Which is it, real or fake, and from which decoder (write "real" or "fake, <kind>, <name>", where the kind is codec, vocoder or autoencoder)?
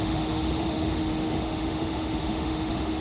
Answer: fake, autoencoder, DAC-VAE